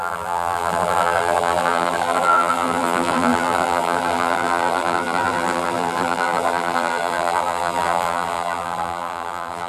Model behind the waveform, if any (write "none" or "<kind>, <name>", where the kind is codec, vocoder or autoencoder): vocoder, BigVGAN v2